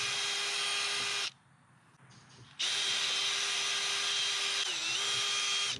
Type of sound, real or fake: real